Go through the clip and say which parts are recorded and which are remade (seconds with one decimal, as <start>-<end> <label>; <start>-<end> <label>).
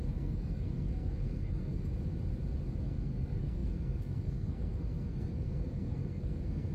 0.0-1.9 remade; 1.9-2.8 recorded; 2.8-6.7 remade